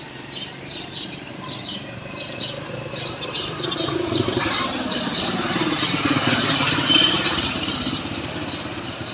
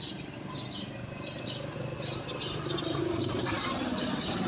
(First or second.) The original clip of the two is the second